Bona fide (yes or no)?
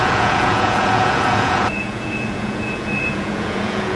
no